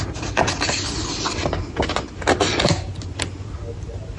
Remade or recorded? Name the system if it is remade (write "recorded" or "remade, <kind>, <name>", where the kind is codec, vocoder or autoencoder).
recorded